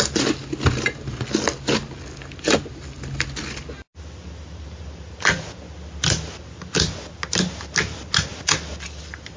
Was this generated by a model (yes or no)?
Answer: no